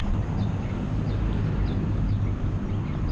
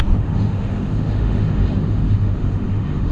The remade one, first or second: second